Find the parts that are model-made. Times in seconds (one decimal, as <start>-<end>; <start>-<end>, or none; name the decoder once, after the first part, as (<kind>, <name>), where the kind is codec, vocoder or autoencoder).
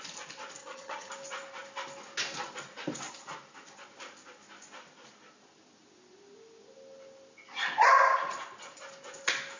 0.6-1.1 (vocoder, HiFi-GAN)